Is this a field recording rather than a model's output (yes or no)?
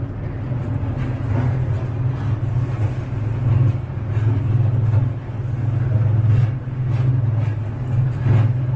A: yes